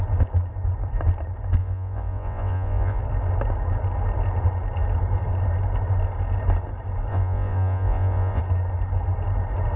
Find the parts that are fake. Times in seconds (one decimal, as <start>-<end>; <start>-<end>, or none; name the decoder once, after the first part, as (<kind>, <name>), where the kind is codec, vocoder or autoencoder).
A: 1.6-3.0 (vocoder, Vocos); 7.1-8.4